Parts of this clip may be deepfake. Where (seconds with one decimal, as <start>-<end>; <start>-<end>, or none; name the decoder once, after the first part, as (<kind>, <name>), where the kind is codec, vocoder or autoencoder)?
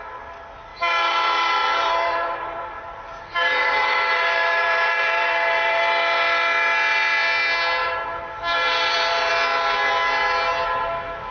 0.7-5.8 (vocoder, BigVGAN v2); 7.8-9.3